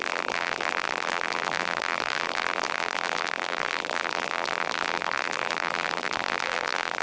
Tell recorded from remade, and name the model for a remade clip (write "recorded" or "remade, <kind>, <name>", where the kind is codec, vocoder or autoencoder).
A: remade, vocoder, BigVGAN v2